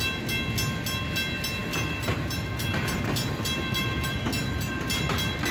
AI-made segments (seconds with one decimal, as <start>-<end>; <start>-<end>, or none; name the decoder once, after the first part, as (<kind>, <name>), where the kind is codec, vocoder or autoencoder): 1.6-4.2 (vocoder, BigVGAN v2)